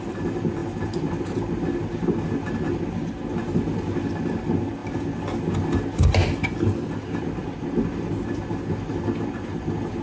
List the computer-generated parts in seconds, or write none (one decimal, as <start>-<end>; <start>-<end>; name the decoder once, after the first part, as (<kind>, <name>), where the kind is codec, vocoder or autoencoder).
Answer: none